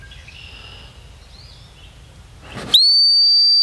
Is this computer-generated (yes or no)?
no